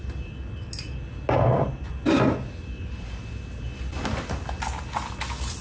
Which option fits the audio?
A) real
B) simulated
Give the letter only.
A